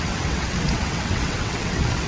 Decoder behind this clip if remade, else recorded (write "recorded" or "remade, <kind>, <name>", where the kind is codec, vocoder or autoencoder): remade, vocoder, WaveNeXt